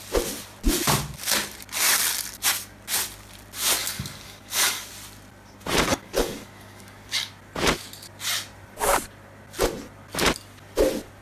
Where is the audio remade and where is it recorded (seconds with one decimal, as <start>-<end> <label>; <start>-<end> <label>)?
0.0-3.8 recorded; 3.8-4.9 remade; 4.9-5.9 recorded; 5.9-7.3 remade; 7.3-11.2 recorded